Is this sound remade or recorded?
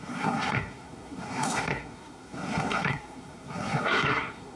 remade